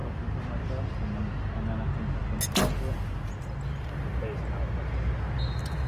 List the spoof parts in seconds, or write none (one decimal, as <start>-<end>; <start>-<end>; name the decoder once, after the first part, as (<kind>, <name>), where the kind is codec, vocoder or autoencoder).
none